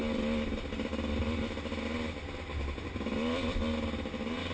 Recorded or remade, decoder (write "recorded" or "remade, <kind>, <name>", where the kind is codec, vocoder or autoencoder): recorded